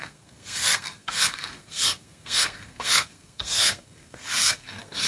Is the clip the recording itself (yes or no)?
no